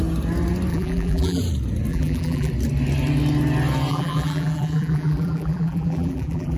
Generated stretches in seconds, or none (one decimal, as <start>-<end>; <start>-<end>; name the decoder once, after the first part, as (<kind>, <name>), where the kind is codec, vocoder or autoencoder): 0.7-1.4 (vocoder, BigVGAN v2); 1.9-2.5; 3.9-6.6